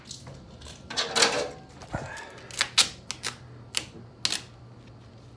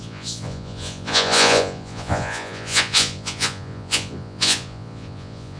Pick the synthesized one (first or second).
second